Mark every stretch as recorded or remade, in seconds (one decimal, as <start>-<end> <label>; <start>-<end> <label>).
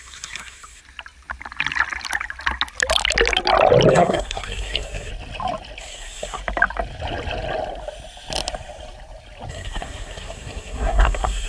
0.0-0.8 remade; 0.8-3.9 recorded; 3.9-5.1 remade; 5.1-5.8 recorded; 5.8-6.4 remade; 6.4-9.5 recorded; 9.5-11.5 remade